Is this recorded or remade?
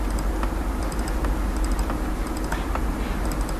recorded